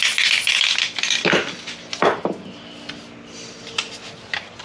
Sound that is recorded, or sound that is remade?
recorded